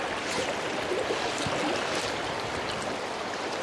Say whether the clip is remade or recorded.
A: recorded